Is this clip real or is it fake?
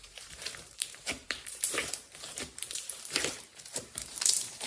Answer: fake